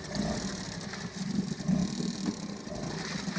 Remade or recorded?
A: recorded